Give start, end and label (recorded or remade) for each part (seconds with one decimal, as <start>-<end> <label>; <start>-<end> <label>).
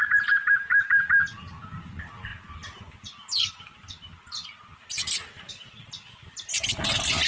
0.0-7.3 recorded